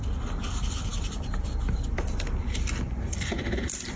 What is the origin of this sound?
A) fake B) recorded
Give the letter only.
A